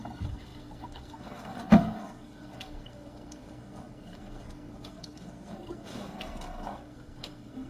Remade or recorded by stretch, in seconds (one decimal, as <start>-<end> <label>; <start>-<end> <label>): 0.0-7.7 remade